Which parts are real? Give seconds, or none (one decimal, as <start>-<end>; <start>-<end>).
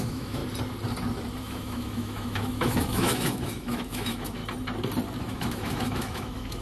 0.4-1.4; 4.4-5.2